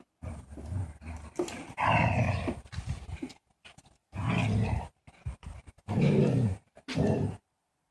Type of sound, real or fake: fake